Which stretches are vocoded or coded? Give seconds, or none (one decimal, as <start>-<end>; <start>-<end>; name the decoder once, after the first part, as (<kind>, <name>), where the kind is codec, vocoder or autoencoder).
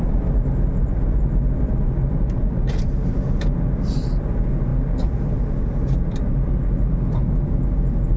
none